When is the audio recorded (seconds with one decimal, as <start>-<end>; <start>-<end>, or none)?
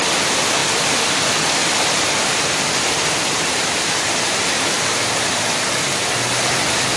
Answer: 0.0-1.6; 5.4-7.0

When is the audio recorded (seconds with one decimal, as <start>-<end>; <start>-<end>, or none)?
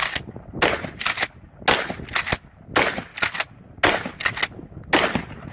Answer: 0.0-5.5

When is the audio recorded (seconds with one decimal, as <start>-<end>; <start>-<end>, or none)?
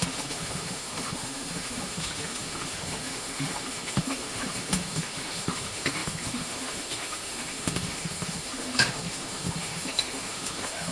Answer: none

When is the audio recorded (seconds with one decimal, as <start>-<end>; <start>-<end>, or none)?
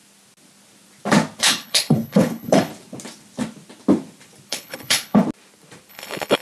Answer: 0.0-1.4; 2.7-4.5; 5.2-5.9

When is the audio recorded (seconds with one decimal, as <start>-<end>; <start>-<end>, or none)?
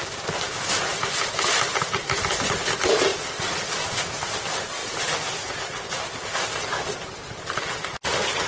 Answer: 0.0-8.5